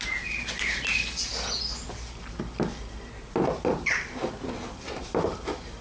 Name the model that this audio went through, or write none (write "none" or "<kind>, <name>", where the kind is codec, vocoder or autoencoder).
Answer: none